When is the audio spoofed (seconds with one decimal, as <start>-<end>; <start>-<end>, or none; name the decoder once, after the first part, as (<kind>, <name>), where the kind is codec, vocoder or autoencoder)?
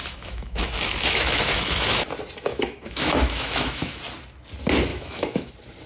0.0-2.0 (autoencoder, DAC-VAE); 2.5-4.0; 4.9-5.5